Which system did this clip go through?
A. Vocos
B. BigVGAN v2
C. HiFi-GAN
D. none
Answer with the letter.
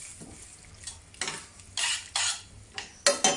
D